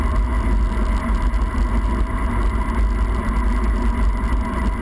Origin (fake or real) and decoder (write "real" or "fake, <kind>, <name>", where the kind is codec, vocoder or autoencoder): real